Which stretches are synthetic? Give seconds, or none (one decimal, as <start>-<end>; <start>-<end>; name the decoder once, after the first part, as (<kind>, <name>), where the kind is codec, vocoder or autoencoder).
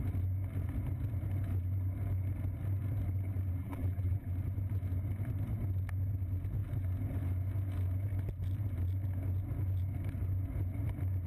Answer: 3.6-4.3 (vocoder, BigVGAN v2)